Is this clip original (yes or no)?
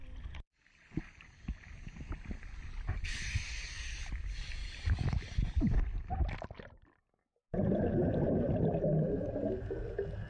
yes